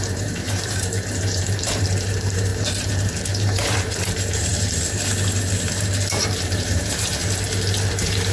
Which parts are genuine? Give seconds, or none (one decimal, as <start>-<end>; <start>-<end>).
4.5-6.3; 7.2-7.9